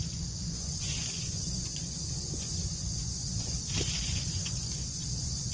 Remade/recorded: remade